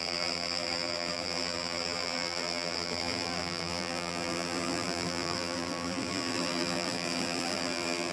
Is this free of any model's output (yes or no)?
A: no